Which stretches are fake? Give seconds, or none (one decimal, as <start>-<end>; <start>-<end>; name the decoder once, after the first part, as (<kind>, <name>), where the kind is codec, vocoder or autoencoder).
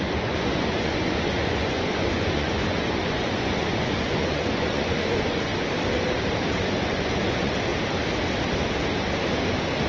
0.0-5.5 (vocoder, Vocos); 6.6-7.7